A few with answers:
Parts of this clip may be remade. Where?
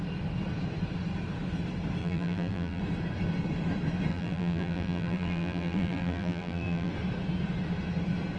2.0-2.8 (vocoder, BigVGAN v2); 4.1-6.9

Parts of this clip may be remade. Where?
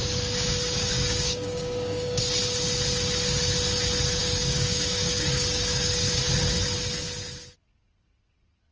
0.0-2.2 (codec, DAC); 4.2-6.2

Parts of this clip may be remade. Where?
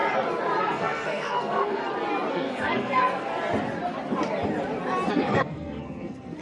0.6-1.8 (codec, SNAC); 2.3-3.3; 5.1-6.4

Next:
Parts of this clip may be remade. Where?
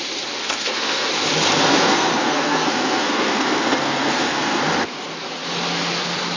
0.4-1.1 (codec, SNAC); 1.7-4.6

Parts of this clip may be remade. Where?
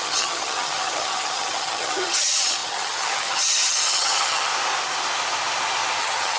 0.0-4.5 (vocoder, HiFi-GAN); 6.0-6.4